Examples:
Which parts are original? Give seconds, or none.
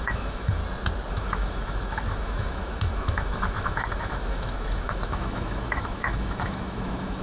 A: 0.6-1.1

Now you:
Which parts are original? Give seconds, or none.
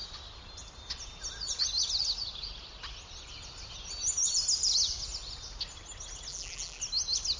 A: 0.0-6.3; 6.8-7.4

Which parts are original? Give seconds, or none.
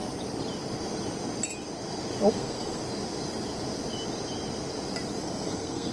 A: 0.0-2.3; 2.8-5.2